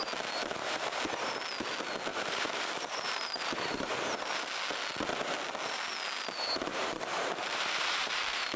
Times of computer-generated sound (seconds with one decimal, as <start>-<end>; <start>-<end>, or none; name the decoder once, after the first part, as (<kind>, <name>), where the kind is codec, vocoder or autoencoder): 0.4-1.3 (vocoder, BigVGAN v2); 2.1-4.4; 6.7-8.6